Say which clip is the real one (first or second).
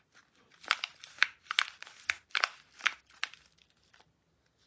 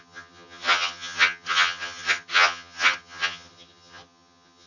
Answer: first